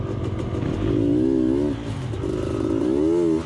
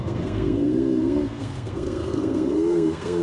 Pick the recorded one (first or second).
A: first